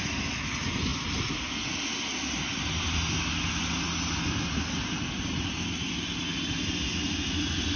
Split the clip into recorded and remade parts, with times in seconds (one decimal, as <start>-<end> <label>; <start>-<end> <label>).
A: 0.0-7.8 recorded